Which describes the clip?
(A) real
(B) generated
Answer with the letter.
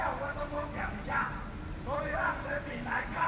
A